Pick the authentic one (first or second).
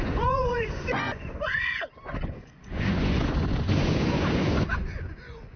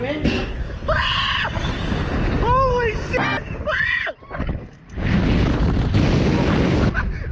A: second